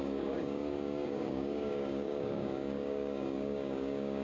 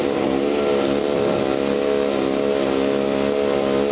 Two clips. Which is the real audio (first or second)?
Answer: second